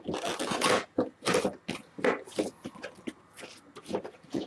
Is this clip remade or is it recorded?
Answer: recorded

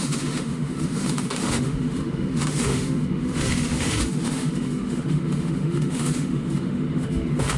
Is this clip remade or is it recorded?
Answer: remade